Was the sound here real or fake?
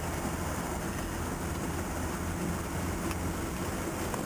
real